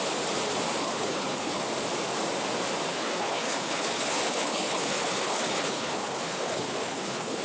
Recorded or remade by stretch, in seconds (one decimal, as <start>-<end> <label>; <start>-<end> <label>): 0.0-0.8 recorded; 0.8-1.6 remade; 1.6-2.9 recorded; 2.9-7.4 remade